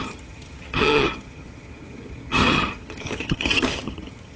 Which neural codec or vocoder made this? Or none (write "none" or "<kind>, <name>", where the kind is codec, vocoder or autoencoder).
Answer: vocoder, HiFi-GAN